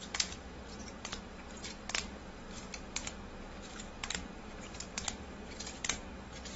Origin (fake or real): fake